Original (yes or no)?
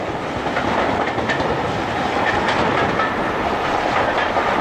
yes